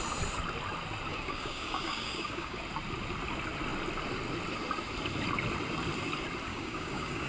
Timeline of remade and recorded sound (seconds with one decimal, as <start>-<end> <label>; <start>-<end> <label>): 0.0-1.1 recorded; 1.1-2.6 remade; 2.6-6.5 recorded; 6.5-7.3 remade